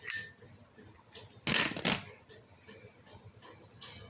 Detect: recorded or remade recorded